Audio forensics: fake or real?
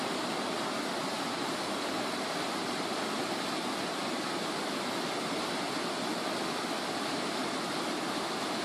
real